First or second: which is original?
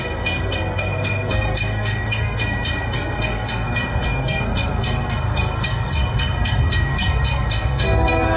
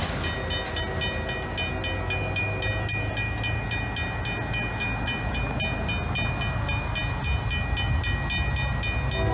second